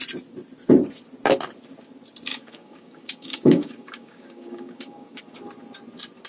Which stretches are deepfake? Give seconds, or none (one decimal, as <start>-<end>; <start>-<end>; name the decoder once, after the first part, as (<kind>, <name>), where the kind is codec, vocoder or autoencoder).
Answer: 2.3-5.2 (codec, DAC)